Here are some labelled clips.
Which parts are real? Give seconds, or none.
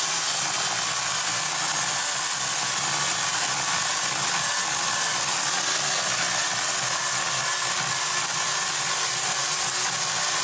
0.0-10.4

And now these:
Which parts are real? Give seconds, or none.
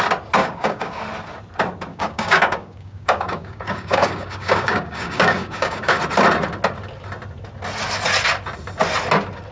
0.0-0.4; 1.0-1.9; 6.0-9.5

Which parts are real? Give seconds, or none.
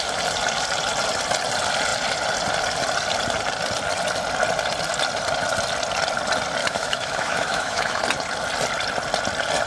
0.0-6.6; 8.0-9.7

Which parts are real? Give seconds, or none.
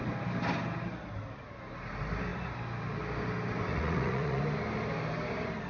0.0-3.7; 4.4-5.7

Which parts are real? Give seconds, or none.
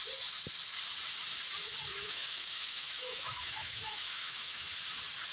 0.0-1.9; 4.7-5.3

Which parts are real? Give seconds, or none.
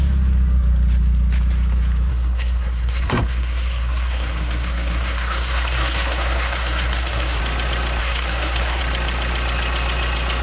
0.0-2.1; 7.4-8.0; 8.8-10.4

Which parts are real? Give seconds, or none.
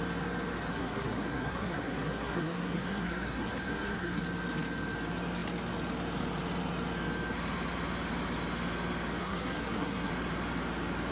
0.0-0.7; 4.2-9.2; 10.1-11.1